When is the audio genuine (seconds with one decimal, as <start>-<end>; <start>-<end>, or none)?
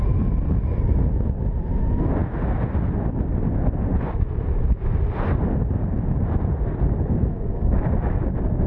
0.0-8.7